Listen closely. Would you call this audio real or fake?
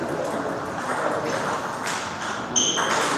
real